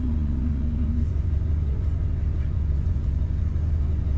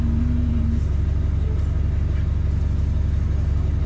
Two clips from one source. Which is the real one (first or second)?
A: second